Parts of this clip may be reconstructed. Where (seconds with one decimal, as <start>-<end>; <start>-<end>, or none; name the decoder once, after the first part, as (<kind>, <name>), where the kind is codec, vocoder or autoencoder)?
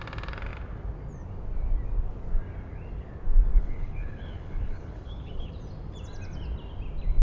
3.5-5.5 (codec, HILCodec)